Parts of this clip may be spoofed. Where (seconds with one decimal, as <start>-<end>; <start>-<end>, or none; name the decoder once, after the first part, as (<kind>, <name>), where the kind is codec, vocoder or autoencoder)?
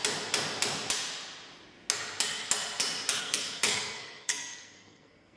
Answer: 3.2-5.4 (codec, SNAC)